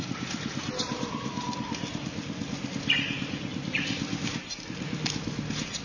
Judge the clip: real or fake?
real